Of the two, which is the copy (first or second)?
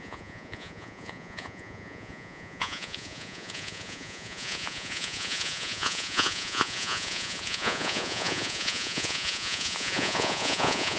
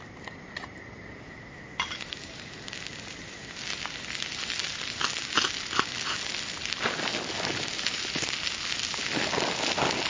first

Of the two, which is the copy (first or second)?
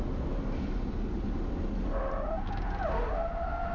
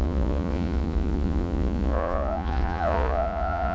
second